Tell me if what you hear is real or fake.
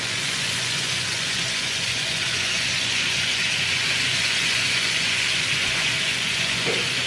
fake